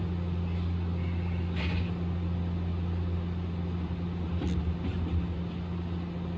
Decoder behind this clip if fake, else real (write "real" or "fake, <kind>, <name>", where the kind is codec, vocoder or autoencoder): real